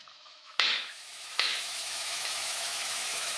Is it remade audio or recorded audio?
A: remade